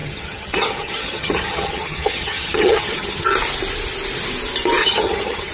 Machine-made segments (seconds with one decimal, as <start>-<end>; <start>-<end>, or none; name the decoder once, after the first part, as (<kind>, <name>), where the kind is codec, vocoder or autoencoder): 0.0-3.3 (vocoder, HiFi-GAN); 4.8-5.5